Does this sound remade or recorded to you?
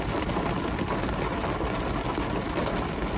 recorded